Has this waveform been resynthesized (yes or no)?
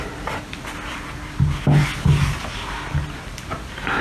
no